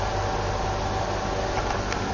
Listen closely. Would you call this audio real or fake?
real